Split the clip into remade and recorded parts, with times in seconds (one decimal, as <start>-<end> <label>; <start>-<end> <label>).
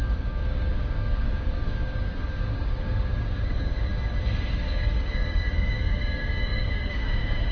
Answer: 0.0-3.9 remade; 3.9-4.5 recorded; 4.5-7.5 remade